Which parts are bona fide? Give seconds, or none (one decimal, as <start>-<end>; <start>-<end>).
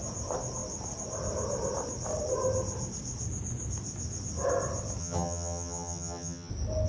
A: 0.0-5.0; 6.5-6.9